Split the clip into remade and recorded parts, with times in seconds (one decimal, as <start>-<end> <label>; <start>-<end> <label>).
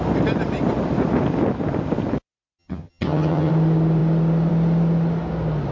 0.0-2.6 recorded; 2.6-3.5 remade; 3.5-5.7 recorded